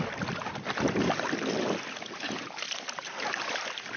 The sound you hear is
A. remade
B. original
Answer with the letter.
B